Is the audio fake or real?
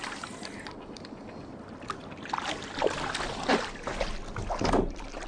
real